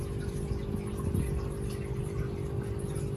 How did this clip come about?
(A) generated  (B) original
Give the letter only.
B